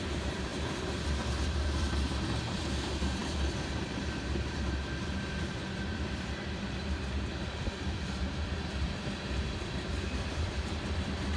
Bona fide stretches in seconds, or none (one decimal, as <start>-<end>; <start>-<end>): none